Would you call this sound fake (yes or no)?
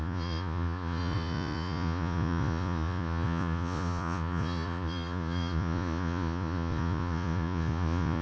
yes